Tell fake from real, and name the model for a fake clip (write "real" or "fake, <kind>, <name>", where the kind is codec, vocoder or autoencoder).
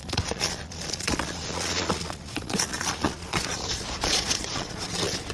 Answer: fake, vocoder, Vocos